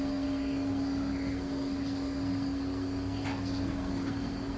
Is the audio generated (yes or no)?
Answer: yes